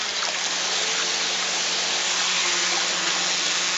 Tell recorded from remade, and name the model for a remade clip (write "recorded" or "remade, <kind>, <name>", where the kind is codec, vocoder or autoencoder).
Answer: recorded